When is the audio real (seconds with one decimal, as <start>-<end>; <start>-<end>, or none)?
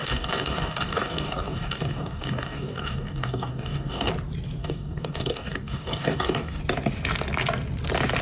4.1-4.6; 6.6-8.2